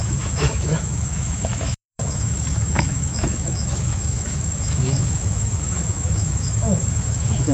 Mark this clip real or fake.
fake